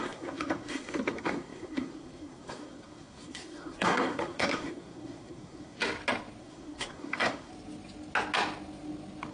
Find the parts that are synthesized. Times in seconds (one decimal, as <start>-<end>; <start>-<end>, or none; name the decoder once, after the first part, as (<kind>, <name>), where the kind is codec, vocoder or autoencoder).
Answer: 0.0-5.8 (codec, SNAC); 6.4-7.5